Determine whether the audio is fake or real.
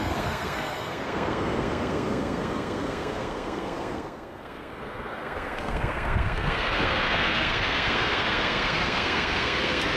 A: fake